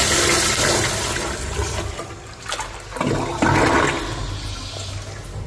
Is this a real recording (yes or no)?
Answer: yes